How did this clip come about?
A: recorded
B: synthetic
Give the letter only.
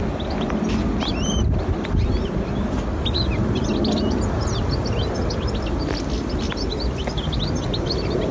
A